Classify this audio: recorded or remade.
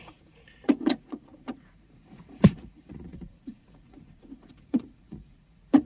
remade